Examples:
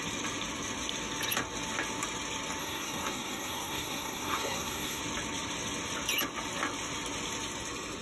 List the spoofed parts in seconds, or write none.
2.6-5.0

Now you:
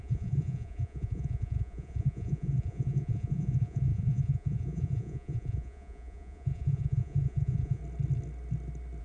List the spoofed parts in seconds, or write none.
0.0-7.8

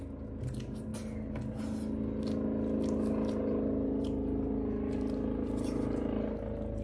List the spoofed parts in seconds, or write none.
none